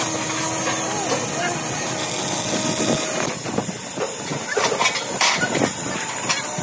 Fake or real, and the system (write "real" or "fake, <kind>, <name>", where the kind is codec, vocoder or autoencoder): real